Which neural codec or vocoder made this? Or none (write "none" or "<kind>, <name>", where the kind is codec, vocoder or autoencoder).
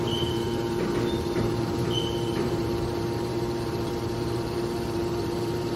vocoder, BigVGAN v2